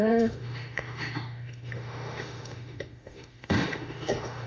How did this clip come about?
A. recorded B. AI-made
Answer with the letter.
B